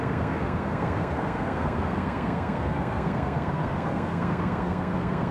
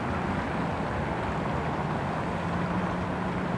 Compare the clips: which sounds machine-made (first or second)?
first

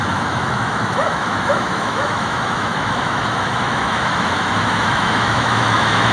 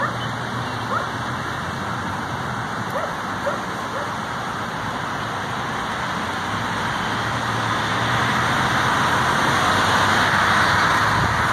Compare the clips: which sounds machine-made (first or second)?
first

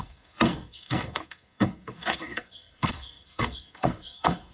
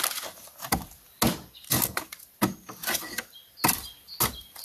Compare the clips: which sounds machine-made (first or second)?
first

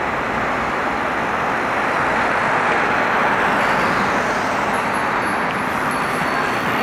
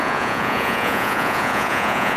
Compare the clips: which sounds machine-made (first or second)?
second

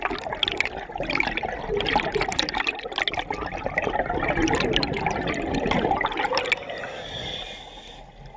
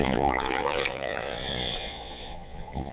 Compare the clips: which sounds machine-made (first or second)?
second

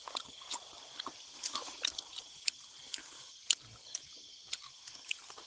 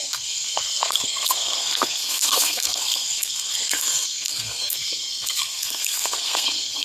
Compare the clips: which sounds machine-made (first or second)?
second